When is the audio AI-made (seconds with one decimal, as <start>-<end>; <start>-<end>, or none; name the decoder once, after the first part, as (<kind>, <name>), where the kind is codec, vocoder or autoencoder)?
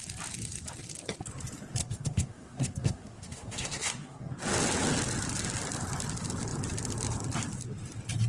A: 1.8-4.3 (codec, SNAC)